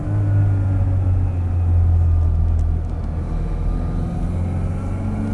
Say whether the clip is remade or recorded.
recorded